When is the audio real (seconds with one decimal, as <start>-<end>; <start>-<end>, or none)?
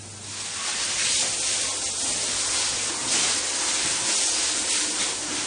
0.0-5.5